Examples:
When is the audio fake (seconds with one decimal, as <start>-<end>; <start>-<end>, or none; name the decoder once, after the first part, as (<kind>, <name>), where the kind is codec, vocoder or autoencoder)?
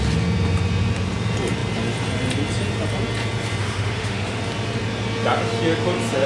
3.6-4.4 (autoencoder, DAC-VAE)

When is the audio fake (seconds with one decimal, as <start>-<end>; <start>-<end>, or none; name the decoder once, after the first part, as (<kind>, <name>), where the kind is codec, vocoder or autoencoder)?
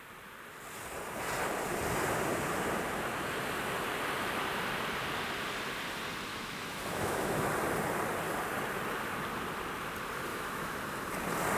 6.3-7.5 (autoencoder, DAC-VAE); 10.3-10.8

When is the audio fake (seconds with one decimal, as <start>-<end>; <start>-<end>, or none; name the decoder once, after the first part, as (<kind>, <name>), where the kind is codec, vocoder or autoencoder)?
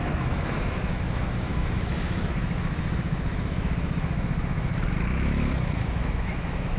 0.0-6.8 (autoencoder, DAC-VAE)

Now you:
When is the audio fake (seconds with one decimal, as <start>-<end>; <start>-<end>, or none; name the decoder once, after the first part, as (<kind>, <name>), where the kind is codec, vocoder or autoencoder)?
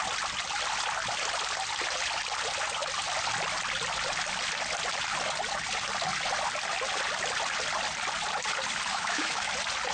8.9-9.5 (autoencoder, DAC-VAE)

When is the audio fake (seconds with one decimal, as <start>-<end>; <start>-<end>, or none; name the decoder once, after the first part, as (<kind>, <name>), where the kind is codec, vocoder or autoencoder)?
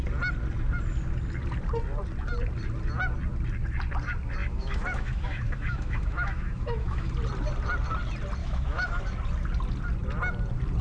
4.4-7.1 (autoencoder, DAC-VAE); 8.4-9.0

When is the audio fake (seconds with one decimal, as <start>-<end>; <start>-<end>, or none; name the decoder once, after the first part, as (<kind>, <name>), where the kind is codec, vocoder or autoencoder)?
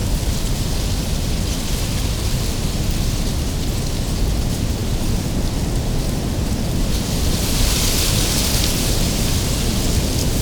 none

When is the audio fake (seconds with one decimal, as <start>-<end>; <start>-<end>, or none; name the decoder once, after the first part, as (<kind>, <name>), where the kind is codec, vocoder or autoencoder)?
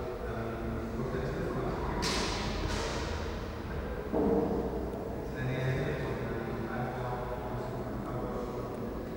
none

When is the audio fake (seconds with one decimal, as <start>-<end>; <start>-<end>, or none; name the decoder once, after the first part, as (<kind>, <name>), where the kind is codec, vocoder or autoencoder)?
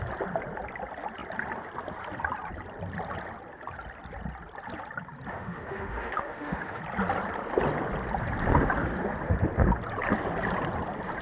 5.3-6.8 (autoencoder, DAC-VAE)